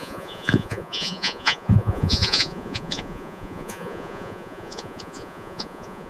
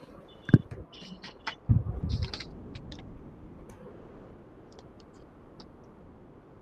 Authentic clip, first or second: second